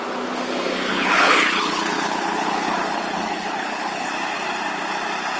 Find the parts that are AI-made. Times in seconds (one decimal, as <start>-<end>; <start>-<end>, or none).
0.9-4.1